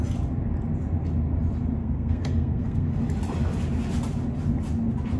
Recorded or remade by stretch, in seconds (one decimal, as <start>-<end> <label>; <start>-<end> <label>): 0.0-1.8 recorded; 1.8-3.0 remade; 3.0-5.2 recorded